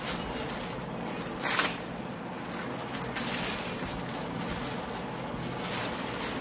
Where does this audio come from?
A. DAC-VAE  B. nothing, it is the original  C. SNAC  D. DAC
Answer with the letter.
B